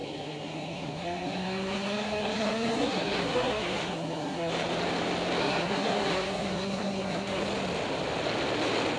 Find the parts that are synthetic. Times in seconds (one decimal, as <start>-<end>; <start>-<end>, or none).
0.0-4.5; 5.4-7.4